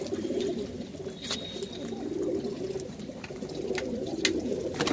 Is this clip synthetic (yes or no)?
no